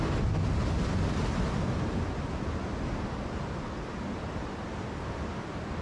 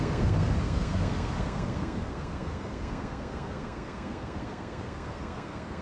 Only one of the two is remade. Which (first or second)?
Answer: second